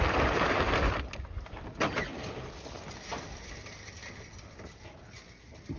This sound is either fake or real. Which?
real